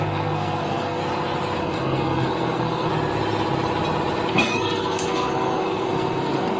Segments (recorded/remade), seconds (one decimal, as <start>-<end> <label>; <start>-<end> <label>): 0.0-1.0 remade; 1.0-1.6 recorded; 1.6-2.9 remade; 2.9-4.3 recorded; 4.3-6.6 remade